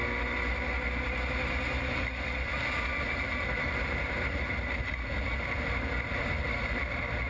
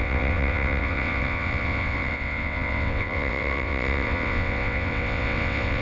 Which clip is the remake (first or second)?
second